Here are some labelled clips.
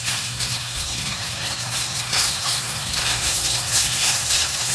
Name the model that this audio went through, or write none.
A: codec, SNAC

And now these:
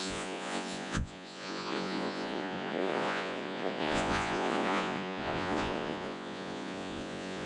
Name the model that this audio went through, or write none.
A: vocoder, Vocos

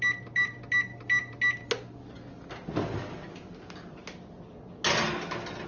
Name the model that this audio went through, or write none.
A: none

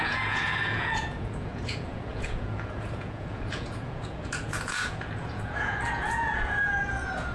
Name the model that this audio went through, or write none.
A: vocoder, Vocos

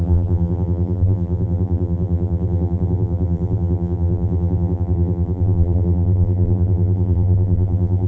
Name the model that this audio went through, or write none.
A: vocoder, BigVGAN v2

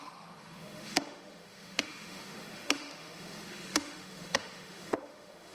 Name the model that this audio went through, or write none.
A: autoencoder, DAC-VAE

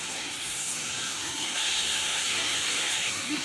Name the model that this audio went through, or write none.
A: codec, SNAC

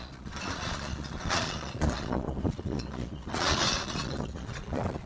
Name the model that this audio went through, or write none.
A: vocoder, Vocos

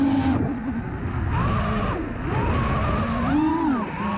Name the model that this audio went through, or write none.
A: none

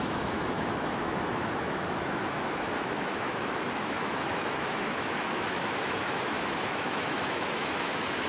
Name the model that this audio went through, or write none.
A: autoencoder, DAC-VAE